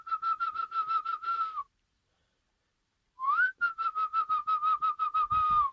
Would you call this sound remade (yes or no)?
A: yes